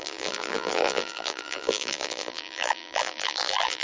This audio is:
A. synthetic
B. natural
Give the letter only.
A